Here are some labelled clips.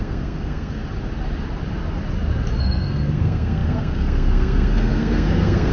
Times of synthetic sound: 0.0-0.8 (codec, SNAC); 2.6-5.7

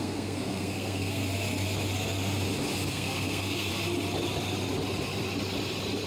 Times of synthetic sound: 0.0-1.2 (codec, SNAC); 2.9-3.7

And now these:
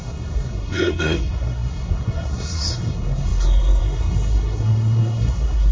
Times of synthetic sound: 0.0-5.7 (codec, SNAC)